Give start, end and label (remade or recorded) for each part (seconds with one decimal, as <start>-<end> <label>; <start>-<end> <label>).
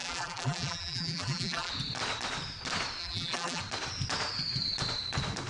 0.0-1.7 remade; 1.7-3.0 recorded; 3.0-3.6 remade; 3.6-5.5 recorded